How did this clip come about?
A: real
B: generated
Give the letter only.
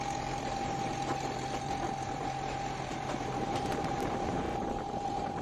B